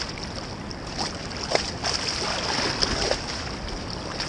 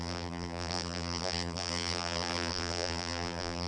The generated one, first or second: second